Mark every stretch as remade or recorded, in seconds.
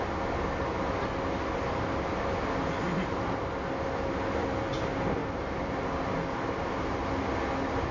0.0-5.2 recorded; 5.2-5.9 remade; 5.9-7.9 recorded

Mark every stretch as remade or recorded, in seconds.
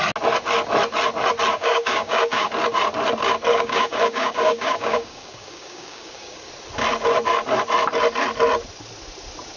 0.0-1.5 recorded; 1.5-2.5 remade; 2.5-3.5 recorded; 3.5-6.5 remade; 6.5-9.6 recorded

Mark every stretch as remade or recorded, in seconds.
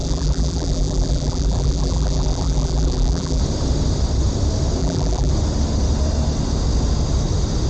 0.0-3.4 remade; 3.4-4.8 recorded; 4.8-5.3 remade; 5.3-7.7 recorded